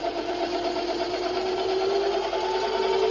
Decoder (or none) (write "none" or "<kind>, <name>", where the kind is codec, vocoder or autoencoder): vocoder, BigVGAN v2